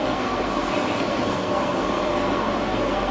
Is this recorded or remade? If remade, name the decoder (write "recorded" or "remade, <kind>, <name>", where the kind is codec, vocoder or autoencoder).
remade, codec, SNAC